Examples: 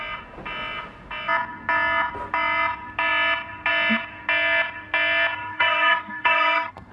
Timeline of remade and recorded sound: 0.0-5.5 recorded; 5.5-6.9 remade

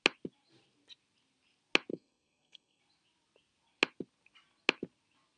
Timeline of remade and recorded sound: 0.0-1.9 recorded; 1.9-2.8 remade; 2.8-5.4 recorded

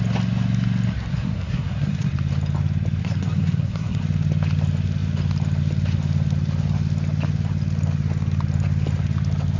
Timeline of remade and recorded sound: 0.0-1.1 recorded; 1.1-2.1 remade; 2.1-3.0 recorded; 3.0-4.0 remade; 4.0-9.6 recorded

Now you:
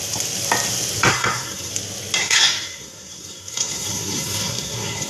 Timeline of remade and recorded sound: 0.0-1.1 recorded; 1.1-1.7 remade; 1.7-2.2 recorded; 2.2-5.1 remade

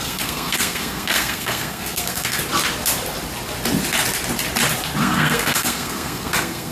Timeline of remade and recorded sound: 0.0-2.4 remade; 2.4-5.0 recorded; 5.0-6.7 remade